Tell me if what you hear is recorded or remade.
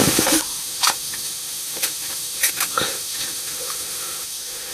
remade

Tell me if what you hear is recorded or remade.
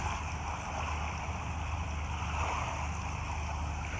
recorded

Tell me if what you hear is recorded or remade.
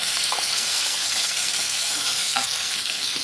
remade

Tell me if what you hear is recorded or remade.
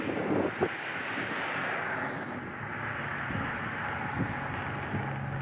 recorded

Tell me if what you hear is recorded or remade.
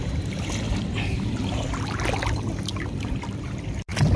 recorded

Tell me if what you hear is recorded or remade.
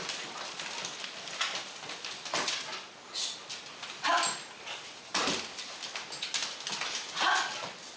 recorded